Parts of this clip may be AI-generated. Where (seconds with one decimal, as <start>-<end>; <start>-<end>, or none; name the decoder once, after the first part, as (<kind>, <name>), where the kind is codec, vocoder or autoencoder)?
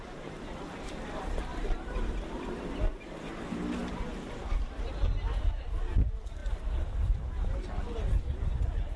none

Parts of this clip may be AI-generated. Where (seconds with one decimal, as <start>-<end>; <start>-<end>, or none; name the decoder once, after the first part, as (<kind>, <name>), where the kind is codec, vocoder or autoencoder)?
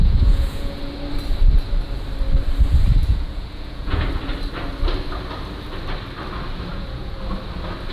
0.0-0.8 (vocoder, Vocos); 3.0-4.1; 6.7-7.2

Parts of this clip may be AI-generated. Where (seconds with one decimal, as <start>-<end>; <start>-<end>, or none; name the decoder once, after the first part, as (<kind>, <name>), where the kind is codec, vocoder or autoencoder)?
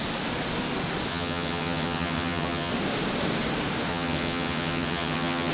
1.1-2.7 (vocoder, HiFi-GAN); 3.9-5.5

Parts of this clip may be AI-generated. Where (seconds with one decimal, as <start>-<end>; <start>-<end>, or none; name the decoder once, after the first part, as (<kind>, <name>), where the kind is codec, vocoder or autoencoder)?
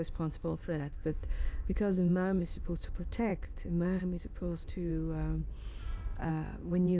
0.0-4.9 (codec, ZipCodec); 6.3-7.0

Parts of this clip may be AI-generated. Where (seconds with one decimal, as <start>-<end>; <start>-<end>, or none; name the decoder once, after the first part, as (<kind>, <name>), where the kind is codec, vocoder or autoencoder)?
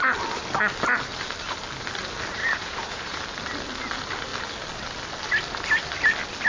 2.4-3.2 (vocoder, Vocos)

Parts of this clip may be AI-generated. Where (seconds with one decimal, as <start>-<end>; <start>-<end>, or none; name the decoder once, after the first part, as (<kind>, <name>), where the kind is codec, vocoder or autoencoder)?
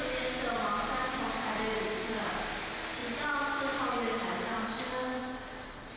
none